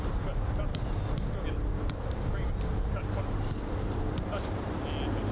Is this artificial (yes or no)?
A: no